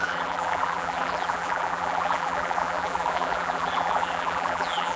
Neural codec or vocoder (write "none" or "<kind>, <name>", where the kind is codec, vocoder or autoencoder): vocoder, BigVGAN v2